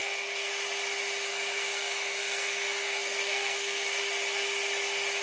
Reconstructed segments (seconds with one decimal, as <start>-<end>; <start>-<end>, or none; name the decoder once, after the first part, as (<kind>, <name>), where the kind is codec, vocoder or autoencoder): 0.0-0.5 (codec, SNAC); 1.3-4.0